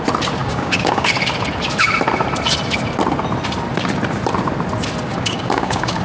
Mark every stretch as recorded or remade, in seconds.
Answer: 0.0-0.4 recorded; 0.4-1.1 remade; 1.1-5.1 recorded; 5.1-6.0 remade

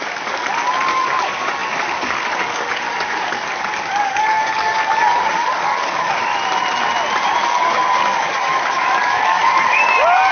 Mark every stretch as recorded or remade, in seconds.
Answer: 0.0-6.3 remade; 6.3-7.4 recorded; 7.4-10.3 remade

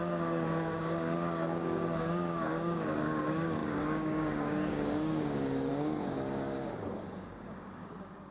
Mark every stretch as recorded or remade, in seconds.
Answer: 0.0-8.3 remade

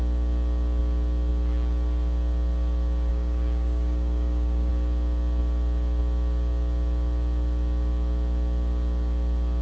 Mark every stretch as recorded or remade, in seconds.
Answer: 0.0-3.1 recorded; 3.1-4.7 remade; 4.7-9.6 recorded

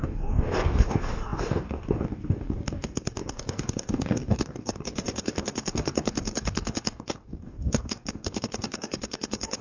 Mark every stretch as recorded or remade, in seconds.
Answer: 0.0-9.6 remade

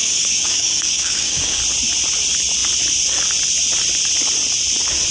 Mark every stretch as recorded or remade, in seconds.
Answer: 0.0-1.6 remade; 1.6-5.1 recorded

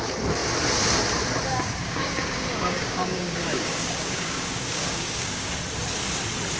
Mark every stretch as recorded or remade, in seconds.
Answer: 0.0-1.5 recorded; 1.5-5.5 remade; 5.5-6.6 recorded

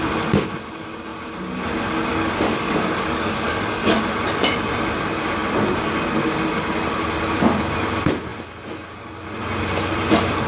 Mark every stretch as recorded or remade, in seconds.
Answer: 0.0-2.1 recorded; 2.1-4.0 remade; 4.0-10.5 recorded